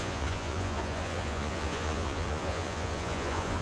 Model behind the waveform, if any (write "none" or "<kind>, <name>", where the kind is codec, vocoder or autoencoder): vocoder, Vocos